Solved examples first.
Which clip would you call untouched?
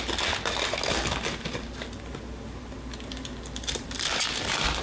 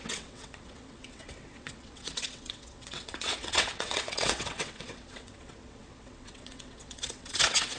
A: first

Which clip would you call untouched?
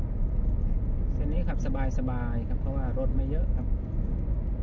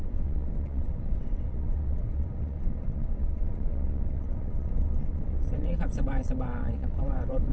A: first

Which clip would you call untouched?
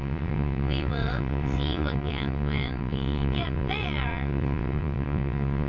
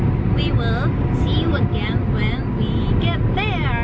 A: second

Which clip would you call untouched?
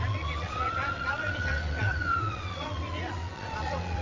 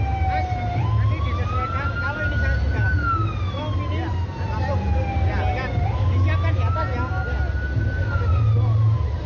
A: second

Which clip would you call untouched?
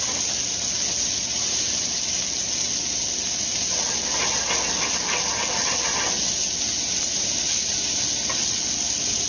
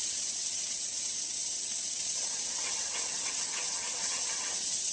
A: first